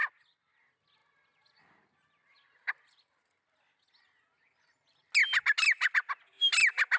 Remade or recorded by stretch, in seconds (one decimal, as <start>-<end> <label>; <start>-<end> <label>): 0.0-7.0 recorded